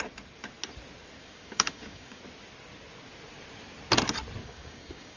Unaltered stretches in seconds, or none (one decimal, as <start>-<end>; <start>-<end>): 0.0-1.2; 2.2-4.4